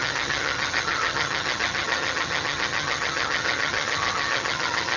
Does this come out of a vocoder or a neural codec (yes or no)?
yes